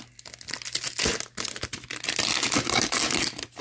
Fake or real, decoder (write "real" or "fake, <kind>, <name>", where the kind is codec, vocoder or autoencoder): real